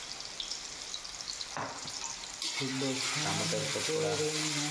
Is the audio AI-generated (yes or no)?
no